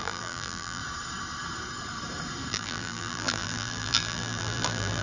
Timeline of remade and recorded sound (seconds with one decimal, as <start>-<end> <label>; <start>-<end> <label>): 0.0-0.8 remade; 0.8-2.5 recorded; 2.5-5.0 remade